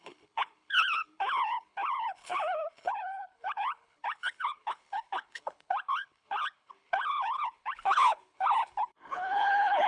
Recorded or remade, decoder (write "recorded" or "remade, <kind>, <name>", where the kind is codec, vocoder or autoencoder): remade, codec, HILCodec